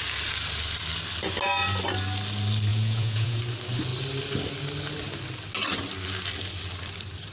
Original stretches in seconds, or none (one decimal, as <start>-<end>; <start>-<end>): 0.0-2.7; 3.4-7.3